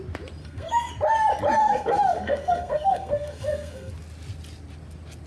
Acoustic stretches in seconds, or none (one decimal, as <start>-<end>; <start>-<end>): 0.0-0.4; 0.9-1.6; 3.9-5.3